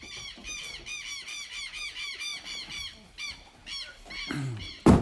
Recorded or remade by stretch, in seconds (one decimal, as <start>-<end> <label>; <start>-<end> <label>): 0.0-0.4 remade; 0.4-1.6 recorded; 1.6-2.3 remade; 2.3-3.2 recorded; 3.2-3.6 remade; 3.6-4.3 recorded; 4.3-5.0 remade